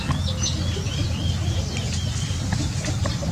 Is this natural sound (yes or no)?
yes